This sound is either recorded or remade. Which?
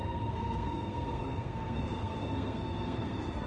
remade